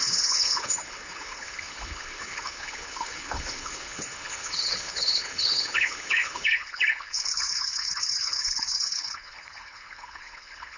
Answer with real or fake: fake